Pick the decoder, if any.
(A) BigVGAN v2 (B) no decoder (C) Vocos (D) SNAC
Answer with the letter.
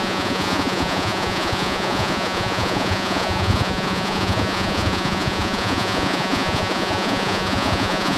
C